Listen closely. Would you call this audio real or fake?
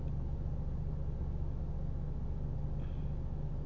real